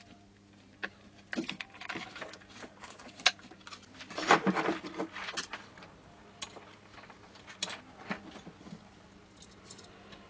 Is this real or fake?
real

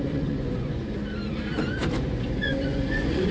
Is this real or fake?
fake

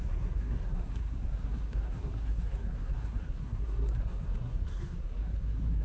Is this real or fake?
fake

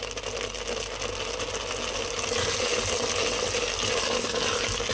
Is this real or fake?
real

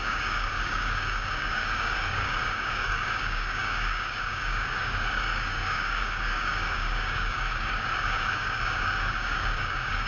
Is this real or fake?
fake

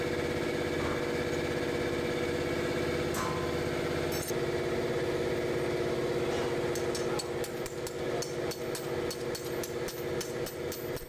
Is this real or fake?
real